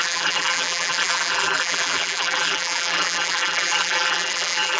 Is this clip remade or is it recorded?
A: remade